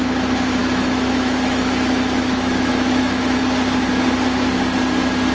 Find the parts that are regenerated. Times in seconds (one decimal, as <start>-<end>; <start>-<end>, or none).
0.6-3.4